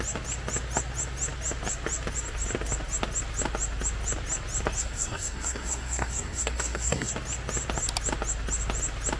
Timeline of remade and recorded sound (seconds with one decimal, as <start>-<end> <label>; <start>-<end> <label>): 0.0-4.8 recorded; 4.8-7.1 remade; 7.1-9.2 recorded